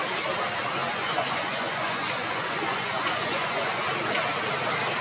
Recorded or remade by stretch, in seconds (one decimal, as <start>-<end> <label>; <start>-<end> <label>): 0.0-0.8 recorded; 0.8-3.8 remade; 3.8-5.0 recorded